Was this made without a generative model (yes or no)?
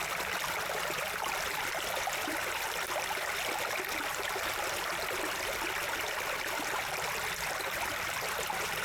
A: yes